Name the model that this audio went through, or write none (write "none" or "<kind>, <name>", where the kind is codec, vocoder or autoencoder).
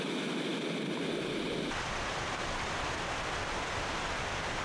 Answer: none